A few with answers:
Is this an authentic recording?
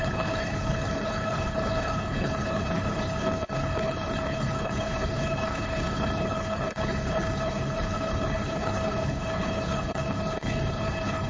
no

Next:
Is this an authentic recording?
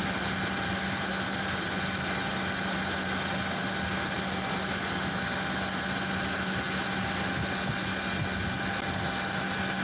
yes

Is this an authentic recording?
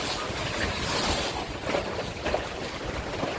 yes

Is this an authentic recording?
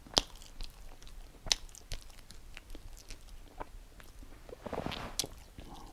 yes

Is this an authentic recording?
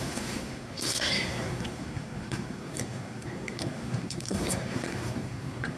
no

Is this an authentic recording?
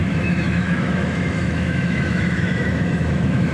no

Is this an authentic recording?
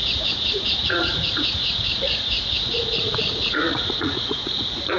no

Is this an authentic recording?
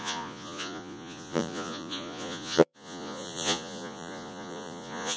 no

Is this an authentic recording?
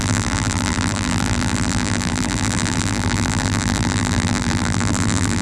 no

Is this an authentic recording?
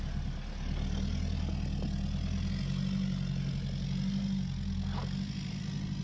yes